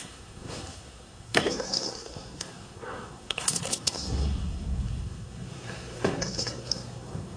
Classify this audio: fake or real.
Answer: fake